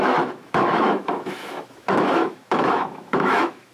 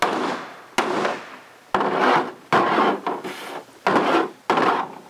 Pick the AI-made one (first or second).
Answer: first